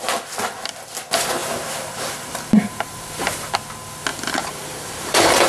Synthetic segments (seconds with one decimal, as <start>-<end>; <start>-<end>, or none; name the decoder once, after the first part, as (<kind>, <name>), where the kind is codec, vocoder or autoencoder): 1.4-3.5 (vocoder, BigVGAN v2); 4.1-5.5